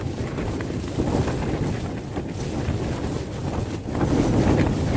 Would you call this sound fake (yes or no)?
no